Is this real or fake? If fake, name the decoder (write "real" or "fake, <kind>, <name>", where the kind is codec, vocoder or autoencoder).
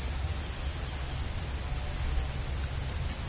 real